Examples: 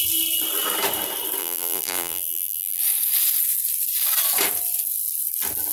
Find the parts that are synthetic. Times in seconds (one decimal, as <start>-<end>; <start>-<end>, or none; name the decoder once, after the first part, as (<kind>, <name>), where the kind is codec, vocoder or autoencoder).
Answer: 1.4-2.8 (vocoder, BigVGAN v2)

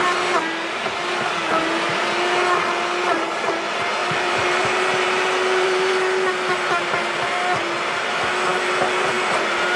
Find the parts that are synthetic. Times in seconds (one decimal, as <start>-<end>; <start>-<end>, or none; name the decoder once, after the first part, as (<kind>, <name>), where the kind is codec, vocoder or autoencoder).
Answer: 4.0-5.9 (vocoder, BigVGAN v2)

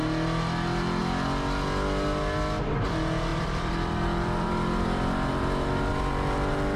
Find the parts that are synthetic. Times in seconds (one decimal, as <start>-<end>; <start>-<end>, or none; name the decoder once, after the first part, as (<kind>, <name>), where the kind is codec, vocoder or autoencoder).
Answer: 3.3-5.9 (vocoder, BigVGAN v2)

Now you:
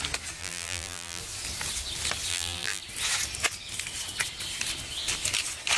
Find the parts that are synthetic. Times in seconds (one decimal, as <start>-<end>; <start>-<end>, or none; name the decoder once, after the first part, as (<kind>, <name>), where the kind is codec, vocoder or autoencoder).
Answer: 0.4-1.2 (vocoder, BigVGAN v2); 2.3-2.8

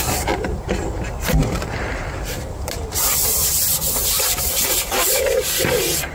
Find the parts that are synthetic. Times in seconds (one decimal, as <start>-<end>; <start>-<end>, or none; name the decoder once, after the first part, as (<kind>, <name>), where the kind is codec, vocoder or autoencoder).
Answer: 0.0-6.1 (vocoder, BigVGAN v2)